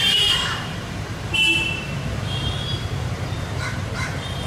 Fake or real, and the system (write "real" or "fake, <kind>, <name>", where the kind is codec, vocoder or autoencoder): fake, vocoder, BigVGAN v2